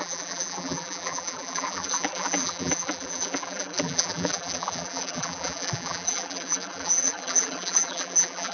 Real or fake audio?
fake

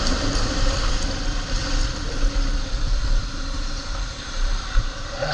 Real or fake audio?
fake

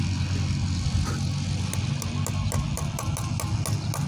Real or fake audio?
real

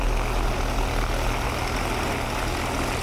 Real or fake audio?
real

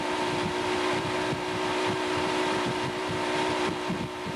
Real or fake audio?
fake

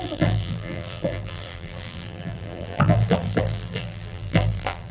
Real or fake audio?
fake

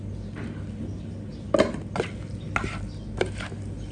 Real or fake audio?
real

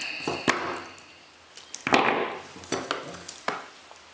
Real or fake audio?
real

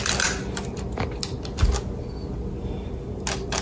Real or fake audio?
real